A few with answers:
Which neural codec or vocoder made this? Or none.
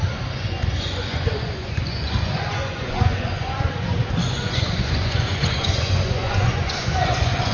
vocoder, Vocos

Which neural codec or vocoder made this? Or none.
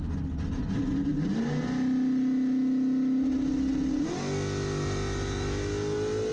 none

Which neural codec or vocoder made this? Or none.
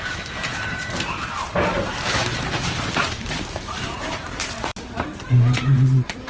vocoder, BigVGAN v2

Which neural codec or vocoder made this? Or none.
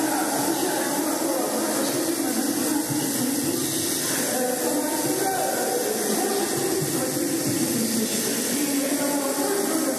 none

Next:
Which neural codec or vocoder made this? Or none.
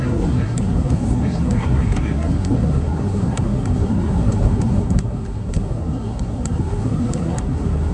codec, SNAC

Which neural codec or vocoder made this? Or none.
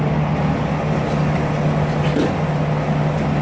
none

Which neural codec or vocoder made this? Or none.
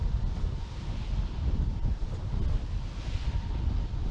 none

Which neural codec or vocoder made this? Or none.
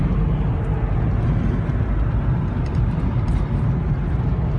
none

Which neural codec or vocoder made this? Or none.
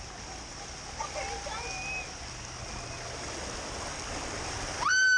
none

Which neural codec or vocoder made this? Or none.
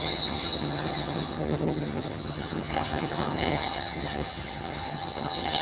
vocoder, HiFi-GAN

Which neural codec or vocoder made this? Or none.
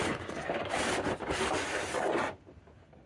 none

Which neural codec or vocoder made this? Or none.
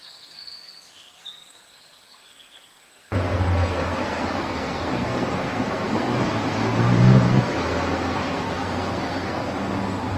codec, SNAC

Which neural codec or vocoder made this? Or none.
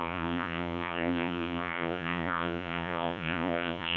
vocoder, Vocos